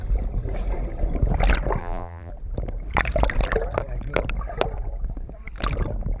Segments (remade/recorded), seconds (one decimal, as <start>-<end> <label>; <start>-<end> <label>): 0.0-1.8 recorded; 1.8-2.3 remade; 2.3-6.2 recorded